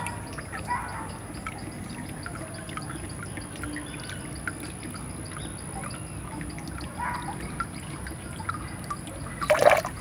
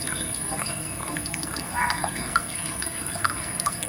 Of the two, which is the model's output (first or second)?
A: second